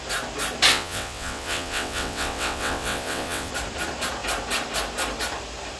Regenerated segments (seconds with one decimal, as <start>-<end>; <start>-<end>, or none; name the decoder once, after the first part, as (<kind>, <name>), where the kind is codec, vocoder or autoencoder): 0.7-3.5 (vocoder, WaveNeXt)